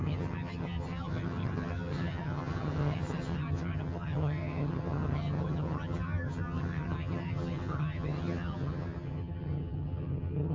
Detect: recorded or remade remade